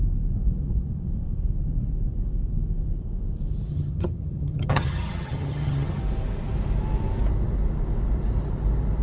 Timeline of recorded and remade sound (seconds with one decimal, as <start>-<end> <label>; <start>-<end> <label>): 0.0-3.7 recorded; 3.7-6.0 remade; 6.0-9.0 recorded